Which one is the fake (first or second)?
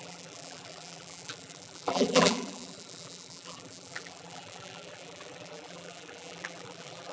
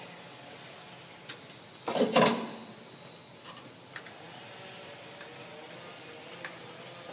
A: first